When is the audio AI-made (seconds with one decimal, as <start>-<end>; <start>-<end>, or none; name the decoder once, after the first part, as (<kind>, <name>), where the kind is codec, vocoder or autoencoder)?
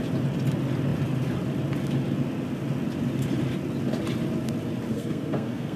4.9-5.8 (codec, SNAC)